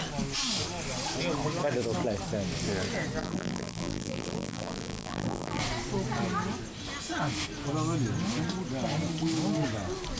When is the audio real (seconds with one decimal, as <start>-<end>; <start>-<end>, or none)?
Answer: 0.0-3.2; 5.6-10.2